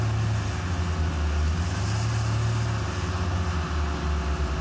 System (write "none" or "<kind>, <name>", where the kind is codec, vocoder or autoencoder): none